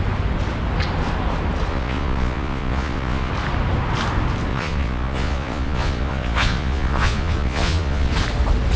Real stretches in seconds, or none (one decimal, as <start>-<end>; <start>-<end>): 0.0-1.7; 3.3-4.5; 8.1-8.8